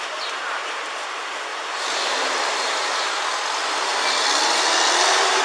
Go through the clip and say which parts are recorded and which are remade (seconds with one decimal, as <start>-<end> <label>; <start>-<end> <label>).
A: 0.0-1.5 recorded; 1.5-3.2 remade; 3.2-5.4 recorded